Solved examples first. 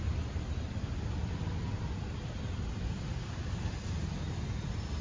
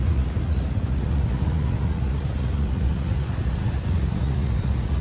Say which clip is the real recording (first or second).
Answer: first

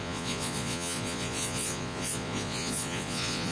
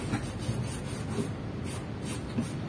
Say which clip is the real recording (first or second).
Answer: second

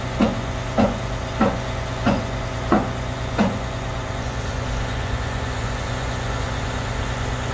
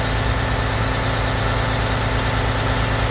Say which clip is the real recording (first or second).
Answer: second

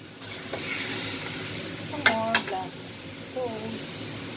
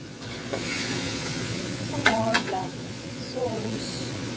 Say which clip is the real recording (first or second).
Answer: first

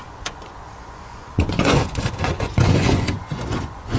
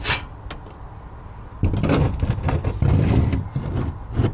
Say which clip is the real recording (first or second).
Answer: second